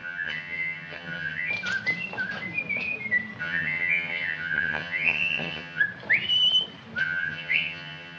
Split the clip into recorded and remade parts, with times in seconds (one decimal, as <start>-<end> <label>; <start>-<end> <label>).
0.0-1.5 remade; 1.5-3.4 recorded; 3.4-5.8 remade; 5.8-7.0 recorded; 7.0-8.2 remade